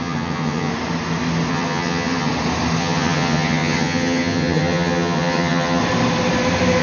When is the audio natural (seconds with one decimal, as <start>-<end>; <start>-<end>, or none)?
0.7-1.5; 2.3-2.8; 5.8-6.8